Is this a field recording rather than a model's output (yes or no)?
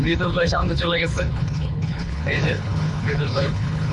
no